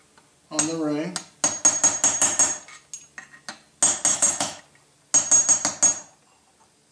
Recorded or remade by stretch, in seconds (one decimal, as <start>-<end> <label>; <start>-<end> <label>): 0.0-4.1 recorded; 4.1-4.6 remade; 4.6-6.9 recorded